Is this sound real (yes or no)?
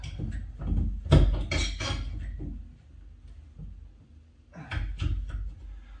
yes